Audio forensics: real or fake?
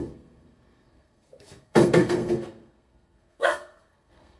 fake